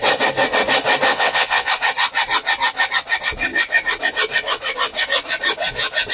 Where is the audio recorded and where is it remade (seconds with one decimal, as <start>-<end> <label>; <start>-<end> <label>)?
0.0-1.1 recorded; 1.1-1.7 remade; 1.7-6.1 recorded